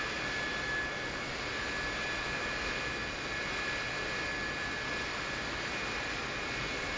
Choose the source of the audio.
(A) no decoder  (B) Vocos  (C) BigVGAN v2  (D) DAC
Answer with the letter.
A